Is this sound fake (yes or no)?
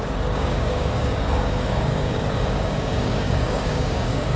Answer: yes